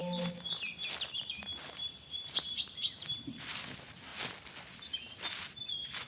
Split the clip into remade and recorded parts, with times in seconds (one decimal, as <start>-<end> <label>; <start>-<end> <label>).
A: 0.0-2.2 recorded; 2.2-4.1 remade; 4.1-6.1 recorded